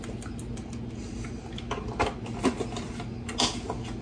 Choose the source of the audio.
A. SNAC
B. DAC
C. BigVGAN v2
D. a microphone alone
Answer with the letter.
D